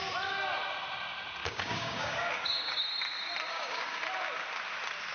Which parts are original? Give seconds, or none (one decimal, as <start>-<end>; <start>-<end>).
0.0-1.4; 2.8-3.5; 4.0-5.1